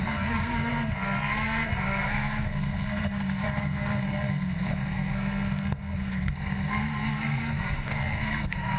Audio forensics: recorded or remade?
remade